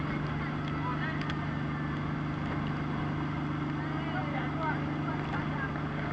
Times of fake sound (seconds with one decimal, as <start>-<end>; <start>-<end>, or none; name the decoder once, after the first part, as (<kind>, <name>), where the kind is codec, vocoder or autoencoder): none